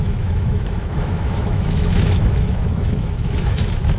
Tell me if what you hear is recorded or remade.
remade